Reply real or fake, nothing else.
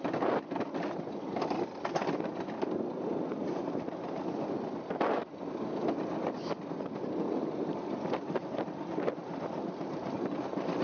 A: real